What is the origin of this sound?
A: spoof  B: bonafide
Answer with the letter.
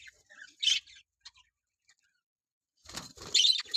B